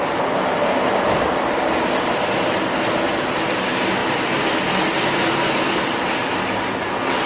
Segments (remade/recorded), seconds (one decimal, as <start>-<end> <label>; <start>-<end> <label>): 0.0-7.3 recorded